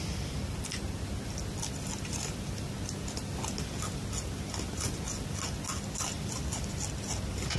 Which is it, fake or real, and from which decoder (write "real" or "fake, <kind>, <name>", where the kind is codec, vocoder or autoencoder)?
real